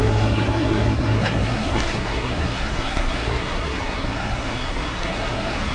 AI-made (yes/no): yes